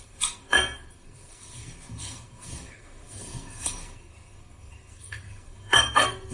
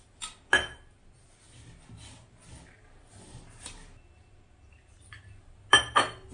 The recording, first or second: second